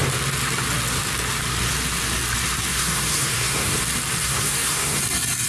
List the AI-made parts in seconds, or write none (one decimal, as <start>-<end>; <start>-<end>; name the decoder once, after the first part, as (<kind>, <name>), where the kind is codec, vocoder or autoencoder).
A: 2.7-3.8 (codec, SNAC); 4.2-5.0